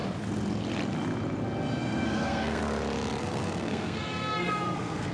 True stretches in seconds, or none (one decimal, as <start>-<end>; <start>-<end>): 0.0-1.8; 2.6-3.2